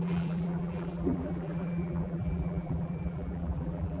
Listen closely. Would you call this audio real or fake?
fake